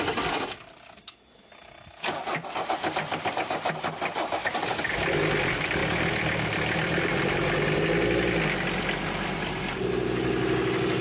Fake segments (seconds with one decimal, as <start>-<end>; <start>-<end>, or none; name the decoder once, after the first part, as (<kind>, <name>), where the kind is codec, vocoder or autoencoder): none